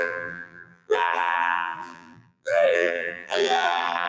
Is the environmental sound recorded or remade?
remade